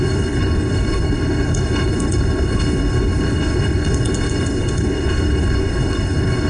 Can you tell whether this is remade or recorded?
remade